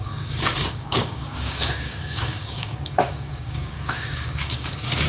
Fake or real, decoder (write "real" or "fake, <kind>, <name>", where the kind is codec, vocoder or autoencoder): fake, codec, DAC